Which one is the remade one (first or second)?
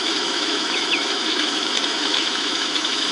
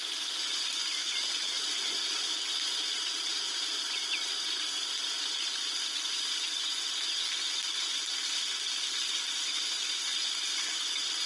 first